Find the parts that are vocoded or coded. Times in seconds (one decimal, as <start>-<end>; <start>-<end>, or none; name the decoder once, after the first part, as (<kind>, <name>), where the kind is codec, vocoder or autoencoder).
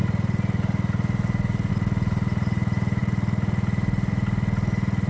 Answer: none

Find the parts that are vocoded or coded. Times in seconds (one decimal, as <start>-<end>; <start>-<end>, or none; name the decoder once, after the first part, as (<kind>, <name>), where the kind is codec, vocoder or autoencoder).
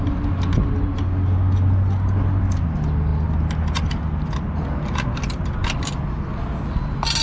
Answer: none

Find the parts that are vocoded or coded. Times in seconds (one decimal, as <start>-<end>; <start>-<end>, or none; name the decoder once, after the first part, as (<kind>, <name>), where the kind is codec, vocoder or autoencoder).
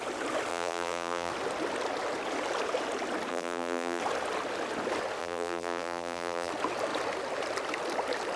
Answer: 0.5-1.3 (vocoder, BigVGAN v2); 3.3-4.0; 5.2-6.5